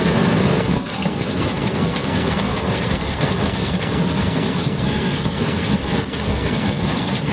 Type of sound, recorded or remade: remade